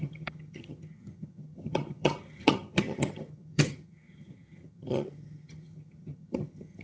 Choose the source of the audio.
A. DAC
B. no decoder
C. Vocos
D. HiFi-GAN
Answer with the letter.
D